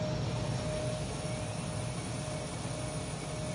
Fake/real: real